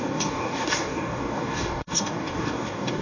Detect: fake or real fake